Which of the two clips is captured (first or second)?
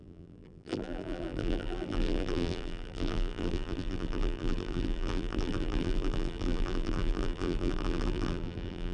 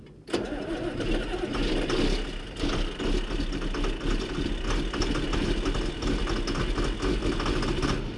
second